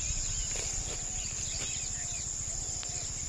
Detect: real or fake real